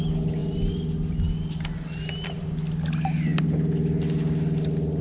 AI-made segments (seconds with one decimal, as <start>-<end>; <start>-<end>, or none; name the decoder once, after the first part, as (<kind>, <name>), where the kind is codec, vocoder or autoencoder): none